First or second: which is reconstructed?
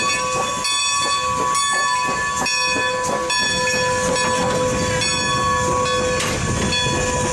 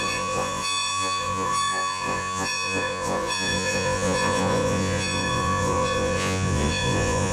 second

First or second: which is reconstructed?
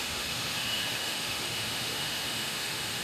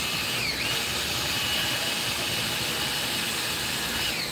first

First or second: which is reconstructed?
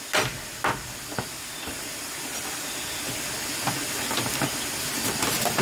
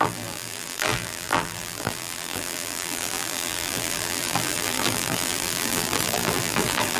second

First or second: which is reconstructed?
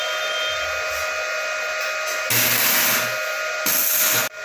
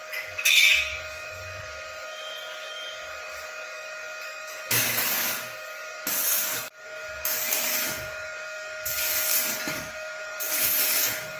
second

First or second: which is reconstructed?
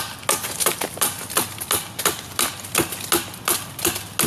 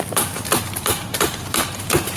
second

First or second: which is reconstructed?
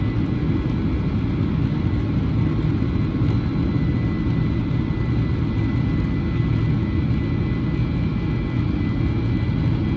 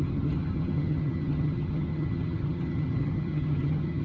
second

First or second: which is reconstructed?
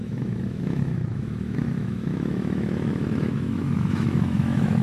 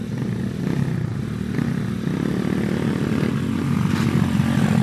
first